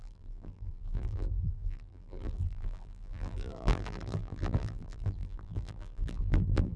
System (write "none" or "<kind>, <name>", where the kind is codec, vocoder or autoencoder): vocoder, BigVGAN v2